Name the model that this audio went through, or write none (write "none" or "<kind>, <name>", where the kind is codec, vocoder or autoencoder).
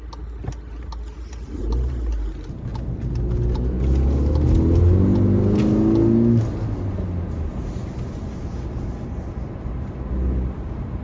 none